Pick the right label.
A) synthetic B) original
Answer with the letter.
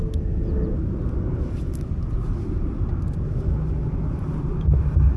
B